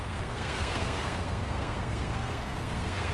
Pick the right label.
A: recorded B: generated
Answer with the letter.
B